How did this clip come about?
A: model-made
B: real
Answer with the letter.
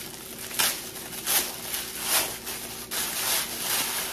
B